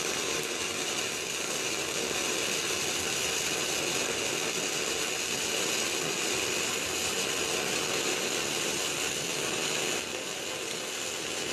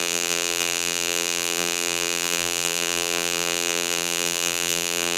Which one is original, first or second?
first